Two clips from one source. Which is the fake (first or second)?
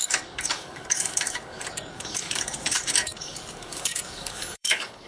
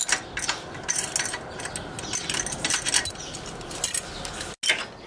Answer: first